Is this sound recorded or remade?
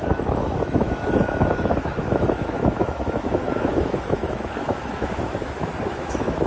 remade